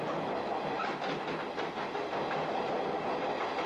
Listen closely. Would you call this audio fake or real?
real